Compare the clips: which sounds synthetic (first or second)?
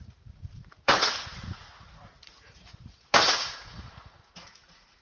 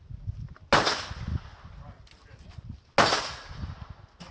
first